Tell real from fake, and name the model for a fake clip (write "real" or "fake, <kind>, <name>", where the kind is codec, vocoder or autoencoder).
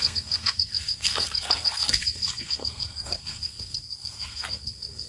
fake, codec, SNAC